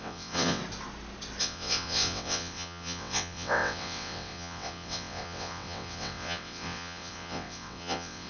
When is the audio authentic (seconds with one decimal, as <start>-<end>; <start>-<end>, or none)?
0.6-1.4